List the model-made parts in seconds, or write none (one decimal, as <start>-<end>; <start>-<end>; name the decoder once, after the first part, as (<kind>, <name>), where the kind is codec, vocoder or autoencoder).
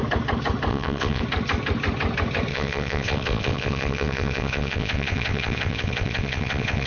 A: 0.7-1.2 (vocoder, WaveNeXt); 2.5-6.9